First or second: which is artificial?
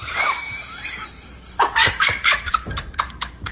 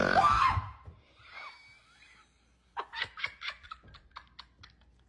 first